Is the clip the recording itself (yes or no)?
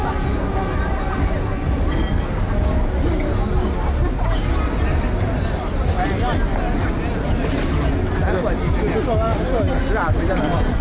yes